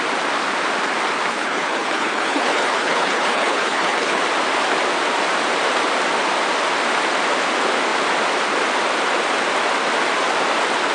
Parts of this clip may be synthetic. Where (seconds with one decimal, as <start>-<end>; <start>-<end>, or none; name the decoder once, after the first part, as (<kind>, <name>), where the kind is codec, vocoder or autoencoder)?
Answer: 1.3-4.2 (codec, HILCodec)